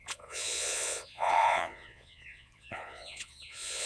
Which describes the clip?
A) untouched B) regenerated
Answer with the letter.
B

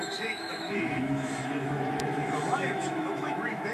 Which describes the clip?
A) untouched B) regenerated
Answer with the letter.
B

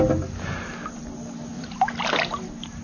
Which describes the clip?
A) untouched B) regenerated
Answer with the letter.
A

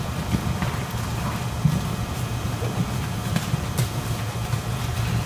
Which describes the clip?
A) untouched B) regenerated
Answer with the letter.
B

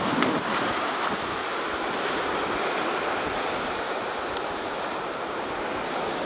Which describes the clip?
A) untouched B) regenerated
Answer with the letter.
B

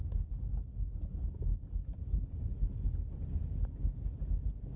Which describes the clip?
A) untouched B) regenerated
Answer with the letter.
A